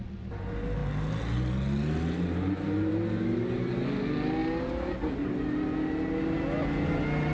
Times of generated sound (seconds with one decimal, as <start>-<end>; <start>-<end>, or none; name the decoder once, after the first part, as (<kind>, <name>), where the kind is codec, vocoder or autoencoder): none